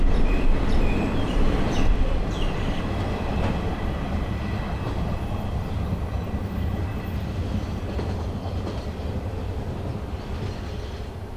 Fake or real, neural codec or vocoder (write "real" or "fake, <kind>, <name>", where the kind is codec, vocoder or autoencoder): real